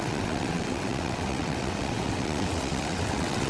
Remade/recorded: remade